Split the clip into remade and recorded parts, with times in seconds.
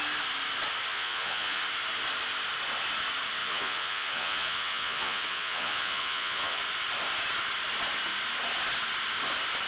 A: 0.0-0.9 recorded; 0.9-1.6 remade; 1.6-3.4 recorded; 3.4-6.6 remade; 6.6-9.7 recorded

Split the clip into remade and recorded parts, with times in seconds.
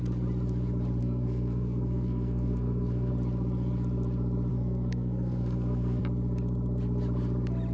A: 0.0-1.0 recorded; 1.0-3.1 remade; 3.1-4.5 recorded; 4.5-6.0 remade; 6.0-7.7 recorded